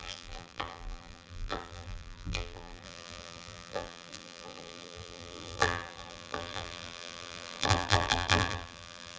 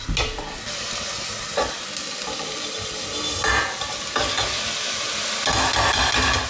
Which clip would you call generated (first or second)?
first